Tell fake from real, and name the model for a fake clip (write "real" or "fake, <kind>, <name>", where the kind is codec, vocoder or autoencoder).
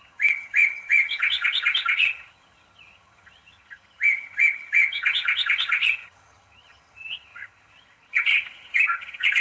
fake, vocoder, HiFi-GAN